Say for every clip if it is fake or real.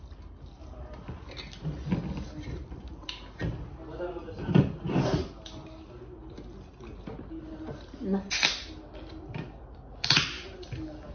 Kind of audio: real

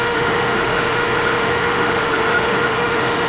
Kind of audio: fake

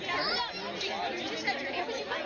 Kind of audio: real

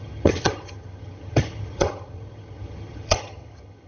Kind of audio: fake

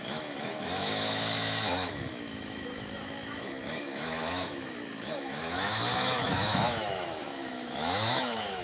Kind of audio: fake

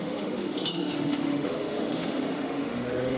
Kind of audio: fake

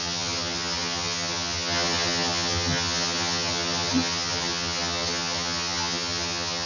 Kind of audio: fake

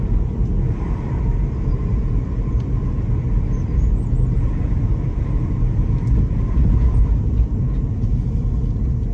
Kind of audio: real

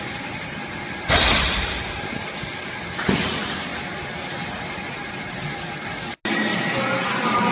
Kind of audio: real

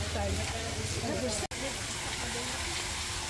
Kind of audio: real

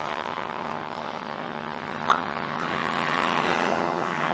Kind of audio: fake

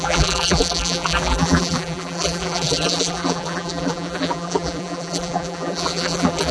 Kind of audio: fake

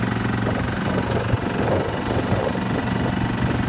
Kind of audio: real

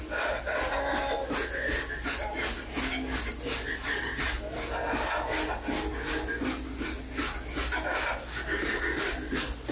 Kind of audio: real